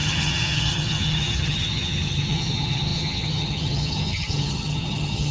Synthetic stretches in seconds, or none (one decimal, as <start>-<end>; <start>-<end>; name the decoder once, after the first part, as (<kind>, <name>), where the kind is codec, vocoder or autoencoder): 0.0-5.3 (vocoder, HiFi-GAN)